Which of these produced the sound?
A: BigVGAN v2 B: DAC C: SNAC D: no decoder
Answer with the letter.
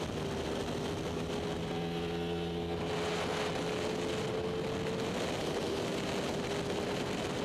D